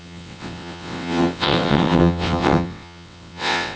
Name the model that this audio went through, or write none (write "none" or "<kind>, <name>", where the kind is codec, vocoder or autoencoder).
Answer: vocoder, WaveNeXt